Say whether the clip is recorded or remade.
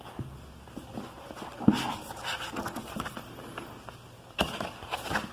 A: recorded